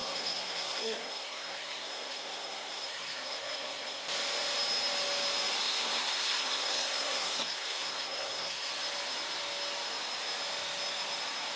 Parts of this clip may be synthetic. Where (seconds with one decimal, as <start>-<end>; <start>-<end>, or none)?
0.0-4.0; 5.6-8.7